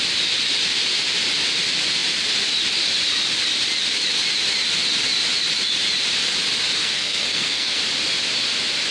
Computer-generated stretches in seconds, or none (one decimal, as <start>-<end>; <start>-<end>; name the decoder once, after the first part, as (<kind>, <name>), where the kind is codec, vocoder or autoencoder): 6.8-7.8 (codec, SNAC)